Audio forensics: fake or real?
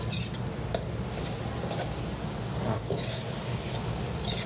real